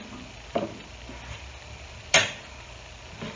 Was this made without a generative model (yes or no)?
yes